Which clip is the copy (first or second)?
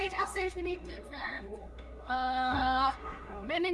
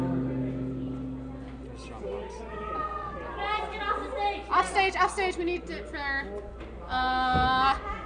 first